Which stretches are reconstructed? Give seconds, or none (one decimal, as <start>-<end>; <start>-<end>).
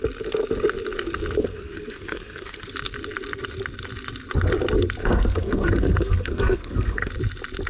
1.4-2.7; 5.0-7.1